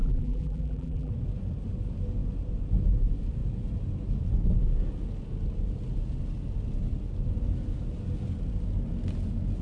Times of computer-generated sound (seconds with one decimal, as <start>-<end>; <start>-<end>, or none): 0.0-1.1